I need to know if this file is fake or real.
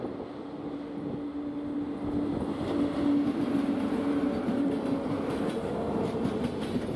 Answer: real